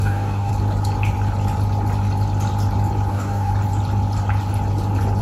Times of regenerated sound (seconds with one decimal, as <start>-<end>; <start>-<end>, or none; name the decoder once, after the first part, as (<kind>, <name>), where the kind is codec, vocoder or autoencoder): 0.0-0.5 (codec, DAC); 3.1-3.5